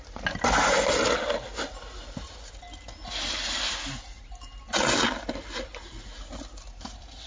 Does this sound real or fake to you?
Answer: real